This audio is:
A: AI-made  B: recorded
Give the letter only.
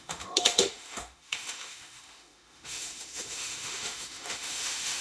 A